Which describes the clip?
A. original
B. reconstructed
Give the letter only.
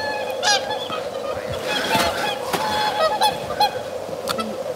A